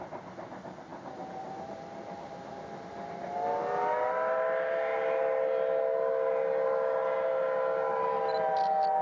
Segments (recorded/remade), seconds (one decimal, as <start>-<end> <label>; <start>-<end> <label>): 0.0-9.0 recorded